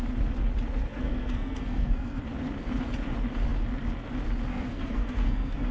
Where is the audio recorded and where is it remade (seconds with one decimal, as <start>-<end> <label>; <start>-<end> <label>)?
0.0-0.9 recorded; 0.9-2.2 remade; 2.2-4.5 recorded; 4.5-5.7 remade